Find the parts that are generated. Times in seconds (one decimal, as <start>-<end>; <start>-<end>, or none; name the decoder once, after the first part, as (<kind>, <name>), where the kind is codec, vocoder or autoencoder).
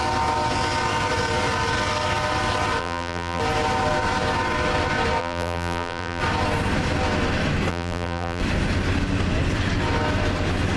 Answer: 2.8-3.4 (vocoder, BigVGAN v2); 5.2-6.2; 7.7-8.4